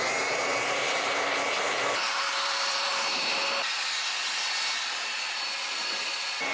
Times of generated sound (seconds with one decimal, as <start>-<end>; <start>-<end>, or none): 0.0-3.4; 5.8-6.5